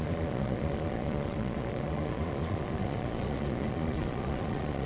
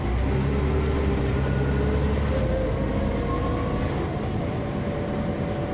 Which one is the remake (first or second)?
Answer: first